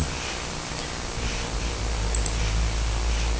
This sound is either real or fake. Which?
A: real